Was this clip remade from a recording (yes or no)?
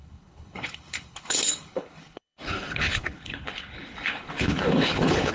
yes